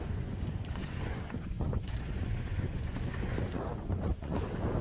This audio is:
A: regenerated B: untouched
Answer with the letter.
A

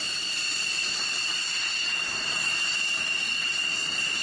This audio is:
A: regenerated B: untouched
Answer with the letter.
B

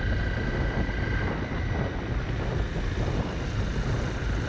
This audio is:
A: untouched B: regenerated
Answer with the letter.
A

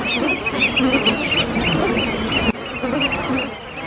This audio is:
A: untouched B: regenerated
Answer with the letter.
A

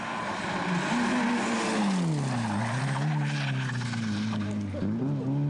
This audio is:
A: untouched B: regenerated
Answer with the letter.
A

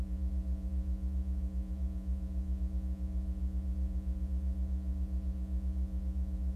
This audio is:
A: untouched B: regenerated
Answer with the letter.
B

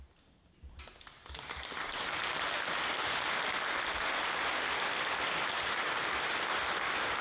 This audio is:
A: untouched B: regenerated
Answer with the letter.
A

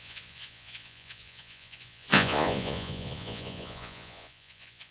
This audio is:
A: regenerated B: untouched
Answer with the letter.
A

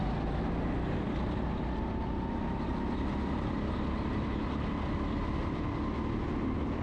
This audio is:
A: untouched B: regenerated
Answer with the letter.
A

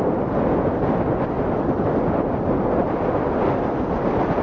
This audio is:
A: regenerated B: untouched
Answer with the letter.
B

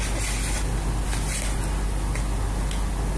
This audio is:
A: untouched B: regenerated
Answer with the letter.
A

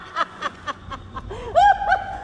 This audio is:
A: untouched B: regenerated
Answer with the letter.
B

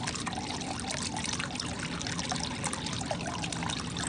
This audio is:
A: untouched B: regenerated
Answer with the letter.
A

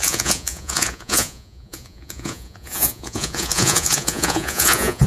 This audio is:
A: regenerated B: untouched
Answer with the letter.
A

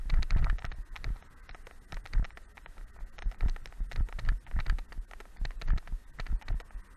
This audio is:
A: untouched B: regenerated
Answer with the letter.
A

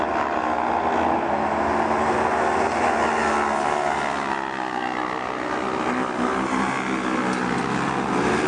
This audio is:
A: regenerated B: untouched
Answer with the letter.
B